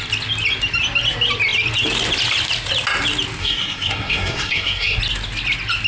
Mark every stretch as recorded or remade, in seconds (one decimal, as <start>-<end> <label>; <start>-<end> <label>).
0.0-3.4 recorded; 3.4-5.0 remade; 5.0-5.9 recorded